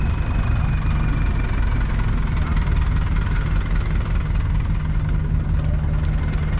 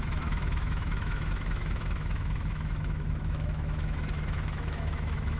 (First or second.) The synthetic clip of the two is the second